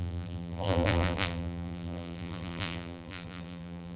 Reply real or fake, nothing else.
fake